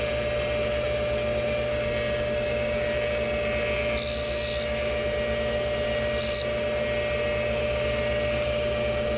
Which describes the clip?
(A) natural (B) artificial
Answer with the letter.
A